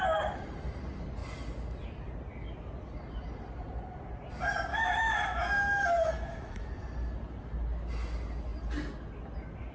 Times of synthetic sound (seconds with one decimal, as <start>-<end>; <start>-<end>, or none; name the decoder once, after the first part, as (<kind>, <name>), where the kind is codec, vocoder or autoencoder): 4.7-6.7 (autoencoder, DAC-VAE)